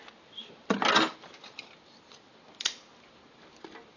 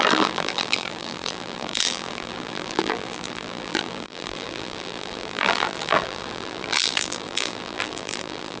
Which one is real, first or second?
first